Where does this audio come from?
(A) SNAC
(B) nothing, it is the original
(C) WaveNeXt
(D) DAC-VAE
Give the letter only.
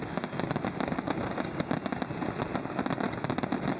B